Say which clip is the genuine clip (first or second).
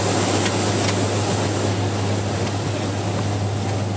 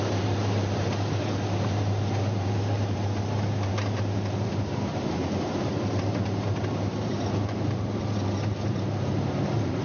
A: first